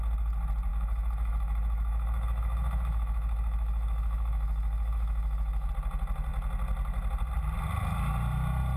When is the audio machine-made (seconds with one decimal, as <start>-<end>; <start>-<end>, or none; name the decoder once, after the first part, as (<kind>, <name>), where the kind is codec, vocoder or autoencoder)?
0.7-5.7 (autoencoder, DAC-VAE)